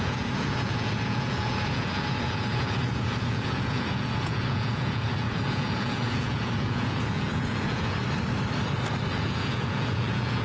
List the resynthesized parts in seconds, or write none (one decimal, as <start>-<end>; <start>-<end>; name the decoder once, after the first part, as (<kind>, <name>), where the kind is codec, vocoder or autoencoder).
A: 0.0-8.0 (vocoder, Vocos); 9.1-10.4